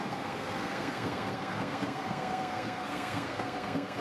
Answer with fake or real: fake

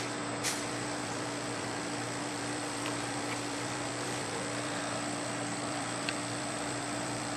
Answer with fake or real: fake